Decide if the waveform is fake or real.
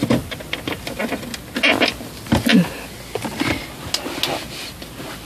real